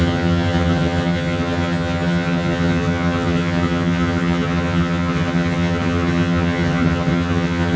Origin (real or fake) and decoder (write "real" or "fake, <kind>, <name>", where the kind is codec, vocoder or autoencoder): fake, vocoder, HiFi-GAN